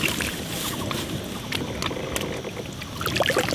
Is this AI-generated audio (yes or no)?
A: no